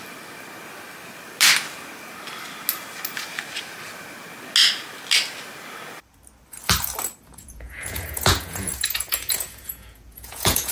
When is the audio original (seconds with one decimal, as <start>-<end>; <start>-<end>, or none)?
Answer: 0.0-7.3

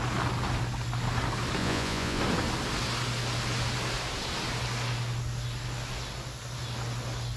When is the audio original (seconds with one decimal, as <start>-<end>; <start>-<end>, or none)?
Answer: 0.0-1.6; 2.2-7.4

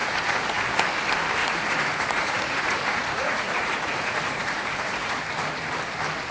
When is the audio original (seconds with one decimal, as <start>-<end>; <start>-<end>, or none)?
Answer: 0.6-1.4; 5.2-6.3

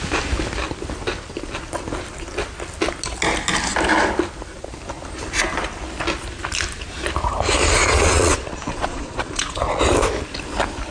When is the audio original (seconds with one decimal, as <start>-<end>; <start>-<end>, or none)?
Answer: 0.0-7.8; 9.8-10.9

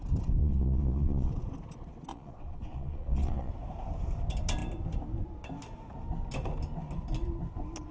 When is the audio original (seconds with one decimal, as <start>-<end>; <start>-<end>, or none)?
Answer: 0.0-0.4; 1.3-2.1; 3.5-7.9